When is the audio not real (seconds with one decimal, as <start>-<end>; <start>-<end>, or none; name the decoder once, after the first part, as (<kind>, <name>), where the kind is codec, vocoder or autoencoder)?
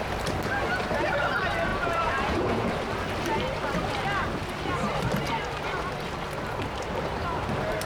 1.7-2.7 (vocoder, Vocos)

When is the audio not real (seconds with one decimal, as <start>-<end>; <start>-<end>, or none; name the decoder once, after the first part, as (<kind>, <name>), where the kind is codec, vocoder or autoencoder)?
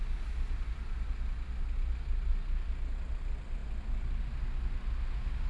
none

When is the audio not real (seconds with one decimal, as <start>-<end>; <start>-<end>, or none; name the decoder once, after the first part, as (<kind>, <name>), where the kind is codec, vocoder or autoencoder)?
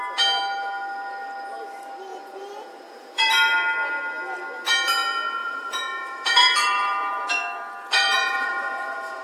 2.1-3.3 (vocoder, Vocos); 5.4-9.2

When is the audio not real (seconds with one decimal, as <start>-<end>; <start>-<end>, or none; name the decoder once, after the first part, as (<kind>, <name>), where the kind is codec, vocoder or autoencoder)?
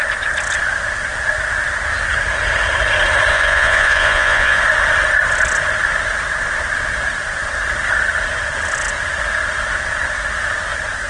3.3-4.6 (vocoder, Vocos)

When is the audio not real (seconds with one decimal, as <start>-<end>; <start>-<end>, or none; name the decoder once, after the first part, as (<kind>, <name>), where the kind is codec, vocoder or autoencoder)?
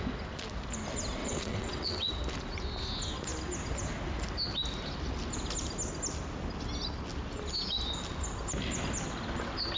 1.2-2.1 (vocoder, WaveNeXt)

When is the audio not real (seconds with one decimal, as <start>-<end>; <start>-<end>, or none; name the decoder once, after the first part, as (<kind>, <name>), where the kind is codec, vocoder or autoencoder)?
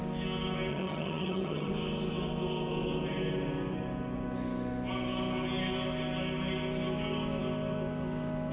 0.7-1.7 (vocoder, HiFi-GAN)